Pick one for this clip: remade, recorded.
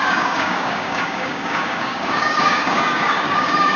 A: remade